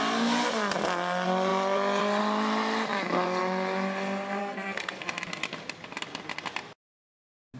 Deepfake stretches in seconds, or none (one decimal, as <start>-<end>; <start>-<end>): 4.4-5.0